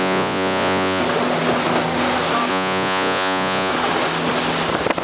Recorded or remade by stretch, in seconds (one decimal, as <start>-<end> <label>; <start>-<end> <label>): 0.0-1.0 remade; 1.0-2.5 recorded; 2.5-3.7 remade; 3.7-5.0 recorded